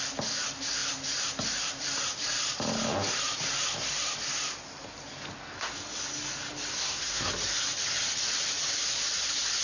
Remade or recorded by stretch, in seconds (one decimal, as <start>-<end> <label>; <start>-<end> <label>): 0.0-6.7 recorded; 6.7-7.3 remade; 7.3-9.6 recorded